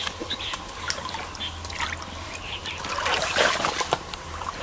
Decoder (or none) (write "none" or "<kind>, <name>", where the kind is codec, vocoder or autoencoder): vocoder, BigVGAN v2